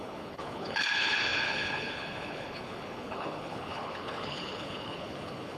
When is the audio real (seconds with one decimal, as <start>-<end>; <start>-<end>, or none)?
none